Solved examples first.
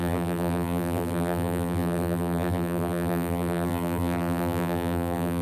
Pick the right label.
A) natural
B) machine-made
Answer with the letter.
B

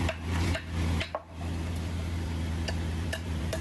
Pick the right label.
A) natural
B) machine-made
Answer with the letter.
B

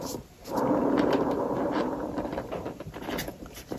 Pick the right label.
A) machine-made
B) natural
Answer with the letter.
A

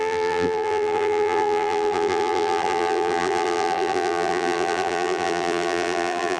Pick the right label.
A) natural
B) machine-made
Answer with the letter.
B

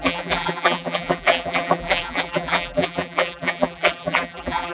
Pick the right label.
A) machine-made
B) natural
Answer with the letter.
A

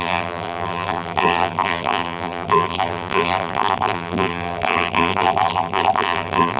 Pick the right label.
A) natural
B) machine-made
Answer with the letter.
B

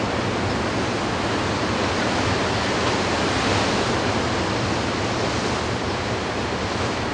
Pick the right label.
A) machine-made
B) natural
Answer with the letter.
B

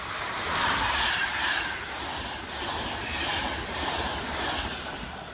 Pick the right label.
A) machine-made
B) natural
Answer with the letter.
A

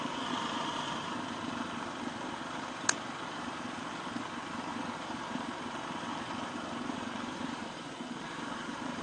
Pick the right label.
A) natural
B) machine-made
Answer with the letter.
B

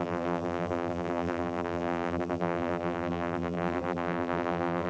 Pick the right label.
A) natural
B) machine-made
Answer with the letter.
B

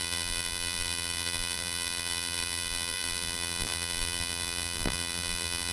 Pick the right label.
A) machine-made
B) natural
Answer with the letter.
A